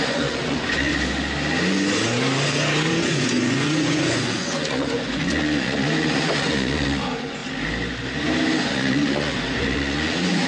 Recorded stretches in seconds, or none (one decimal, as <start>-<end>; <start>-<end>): 0.9-2.9; 7.4-8.7